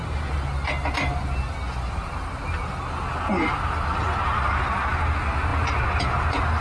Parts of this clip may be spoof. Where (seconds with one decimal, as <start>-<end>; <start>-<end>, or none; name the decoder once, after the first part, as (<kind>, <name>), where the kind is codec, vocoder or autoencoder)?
none